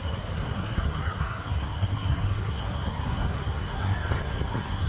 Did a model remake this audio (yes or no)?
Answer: yes